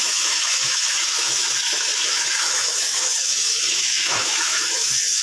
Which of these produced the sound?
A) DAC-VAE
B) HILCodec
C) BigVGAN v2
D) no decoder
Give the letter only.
A